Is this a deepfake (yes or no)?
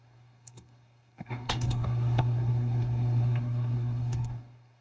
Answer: yes